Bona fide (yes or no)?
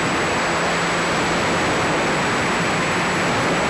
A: yes